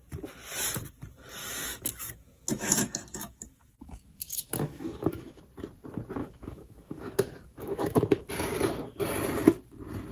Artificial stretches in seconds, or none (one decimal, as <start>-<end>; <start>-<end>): 1.4-5.4; 6.2-8.3